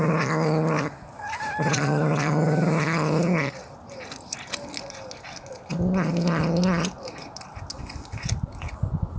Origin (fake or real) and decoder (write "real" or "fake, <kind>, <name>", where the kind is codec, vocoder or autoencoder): real